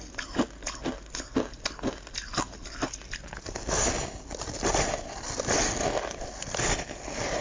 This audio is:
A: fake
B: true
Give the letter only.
B